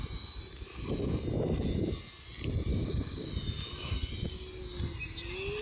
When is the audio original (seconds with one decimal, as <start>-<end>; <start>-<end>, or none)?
0.0-2.7; 3.3-5.6